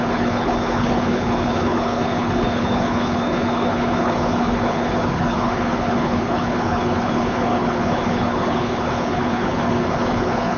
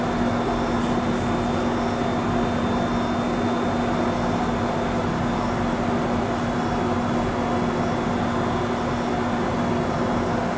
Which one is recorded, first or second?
second